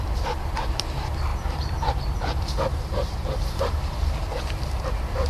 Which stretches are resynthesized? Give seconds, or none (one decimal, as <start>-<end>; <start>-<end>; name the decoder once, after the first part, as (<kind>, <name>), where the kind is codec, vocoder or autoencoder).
1.3-3.9 (vocoder, BigVGAN v2)